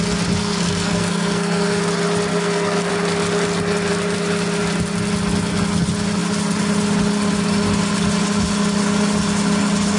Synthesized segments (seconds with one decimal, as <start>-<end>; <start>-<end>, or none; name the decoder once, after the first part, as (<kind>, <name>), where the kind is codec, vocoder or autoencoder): 0.4-1.8 (codec, SNAC); 2.3-2.9